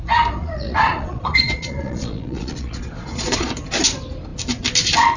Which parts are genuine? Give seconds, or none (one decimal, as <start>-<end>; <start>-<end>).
0.0-0.4; 3.5-5.2